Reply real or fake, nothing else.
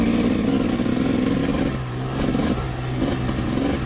real